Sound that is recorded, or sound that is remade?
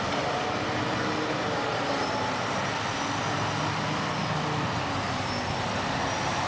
recorded